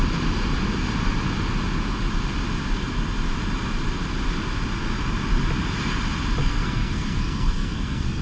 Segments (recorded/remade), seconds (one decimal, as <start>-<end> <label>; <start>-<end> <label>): 0.0-6.4 recorded; 6.4-8.2 remade

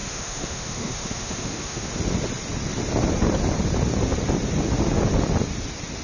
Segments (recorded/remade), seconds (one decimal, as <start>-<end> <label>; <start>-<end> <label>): 0.0-1.9 remade; 1.9-6.0 recorded